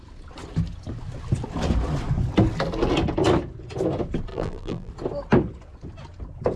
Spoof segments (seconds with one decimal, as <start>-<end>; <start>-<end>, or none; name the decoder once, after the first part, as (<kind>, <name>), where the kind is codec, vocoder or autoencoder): 4.3-4.9 (vocoder, BigVGAN v2)

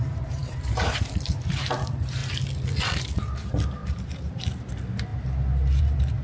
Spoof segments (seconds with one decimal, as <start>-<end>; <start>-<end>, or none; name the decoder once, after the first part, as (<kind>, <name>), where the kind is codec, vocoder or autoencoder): 0.0-2.2 (vocoder, BigVGAN v2); 3.0-5.1; 5.8-6.2